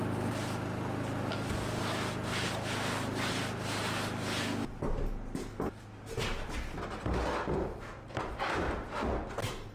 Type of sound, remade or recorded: recorded